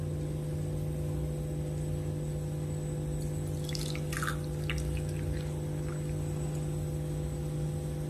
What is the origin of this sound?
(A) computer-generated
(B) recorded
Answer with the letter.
B